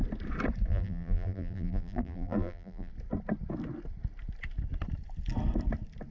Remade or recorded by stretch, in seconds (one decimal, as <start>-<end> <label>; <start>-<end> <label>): 0.0-0.7 recorded; 0.7-2.9 remade; 2.9-6.1 recorded